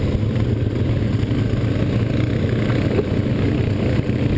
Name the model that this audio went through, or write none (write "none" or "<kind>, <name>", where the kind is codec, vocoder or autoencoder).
none